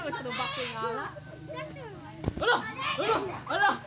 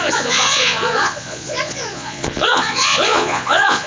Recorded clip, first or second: first